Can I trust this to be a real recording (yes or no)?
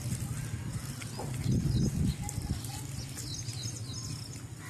yes